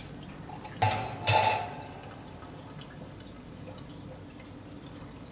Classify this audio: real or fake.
real